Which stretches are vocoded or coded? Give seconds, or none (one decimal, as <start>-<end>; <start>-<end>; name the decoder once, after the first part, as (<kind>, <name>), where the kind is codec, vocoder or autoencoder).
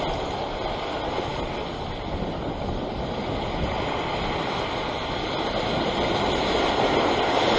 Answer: none